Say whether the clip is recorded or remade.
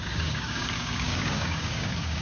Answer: remade